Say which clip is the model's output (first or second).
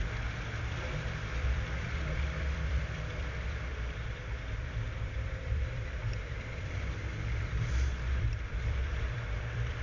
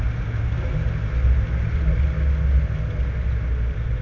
first